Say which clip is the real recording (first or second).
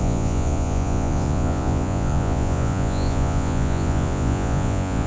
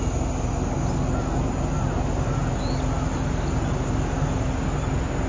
second